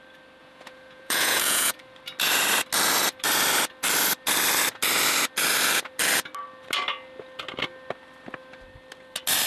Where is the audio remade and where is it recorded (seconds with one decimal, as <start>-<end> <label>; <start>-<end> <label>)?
0.0-0.4 recorded; 0.4-1.7 remade; 1.7-9.5 recorded